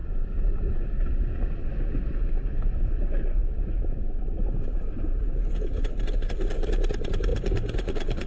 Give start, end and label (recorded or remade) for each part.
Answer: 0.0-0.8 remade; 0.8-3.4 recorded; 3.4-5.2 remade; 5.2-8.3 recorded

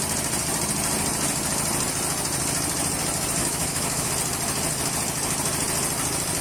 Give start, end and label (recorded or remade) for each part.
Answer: 0.0-3.4 recorded; 3.4-4.1 remade; 4.1-6.4 recorded

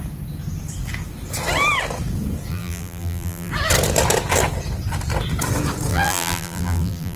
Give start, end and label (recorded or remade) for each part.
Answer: 0.0-2.5 recorded; 2.5-3.5 remade; 3.5-5.9 recorded; 5.9-7.2 remade

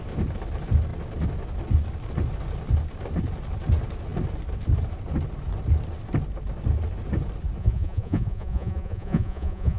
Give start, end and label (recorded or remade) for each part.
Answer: 0.0-7.6 recorded; 7.6-9.8 remade

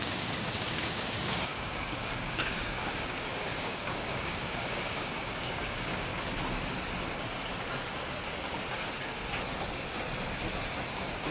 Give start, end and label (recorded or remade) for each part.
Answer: 0.0-6.1 remade; 6.1-10.9 recorded; 10.9-11.3 remade